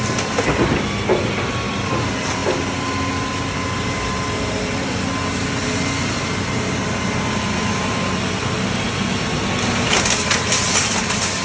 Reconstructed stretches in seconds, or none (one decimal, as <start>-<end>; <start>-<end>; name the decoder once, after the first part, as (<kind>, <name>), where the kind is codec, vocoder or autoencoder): none

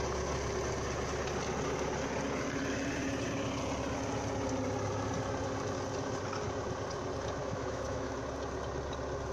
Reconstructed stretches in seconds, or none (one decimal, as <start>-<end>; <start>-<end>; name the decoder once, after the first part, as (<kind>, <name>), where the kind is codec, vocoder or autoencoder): 7.4-8.2 (autoencoder, DAC-VAE)

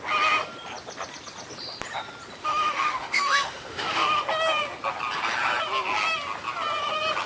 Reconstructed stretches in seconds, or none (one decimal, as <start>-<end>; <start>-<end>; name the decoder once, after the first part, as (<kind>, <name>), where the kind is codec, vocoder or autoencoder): 2.4-4.2 (autoencoder, DAC-VAE)

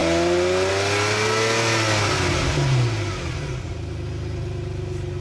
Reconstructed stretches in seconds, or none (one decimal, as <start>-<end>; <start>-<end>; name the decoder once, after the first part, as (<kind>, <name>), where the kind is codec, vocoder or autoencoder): none

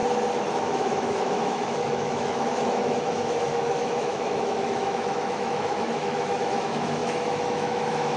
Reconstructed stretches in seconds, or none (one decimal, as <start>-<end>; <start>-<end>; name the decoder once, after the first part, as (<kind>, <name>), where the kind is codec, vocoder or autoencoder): 0.5-8.2 (autoencoder, DAC-VAE)

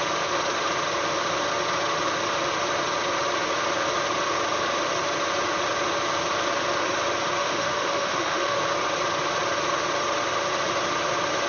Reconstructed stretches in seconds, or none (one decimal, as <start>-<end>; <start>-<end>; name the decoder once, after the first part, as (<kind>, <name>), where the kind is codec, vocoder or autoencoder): 7.4-8.6 (autoencoder, DAC-VAE)